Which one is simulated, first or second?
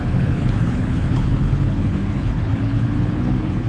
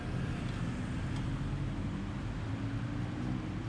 first